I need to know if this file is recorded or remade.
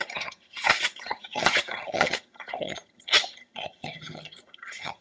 remade